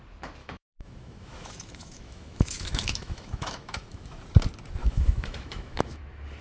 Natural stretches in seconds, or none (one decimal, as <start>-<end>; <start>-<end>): 0.0-0.4; 4.2-4.8; 6.0-6.4